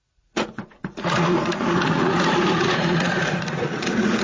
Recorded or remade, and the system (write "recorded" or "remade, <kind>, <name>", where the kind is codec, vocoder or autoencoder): remade, vocoder, Vocos